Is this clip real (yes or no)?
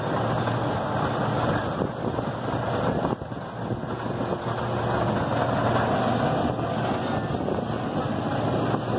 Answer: yes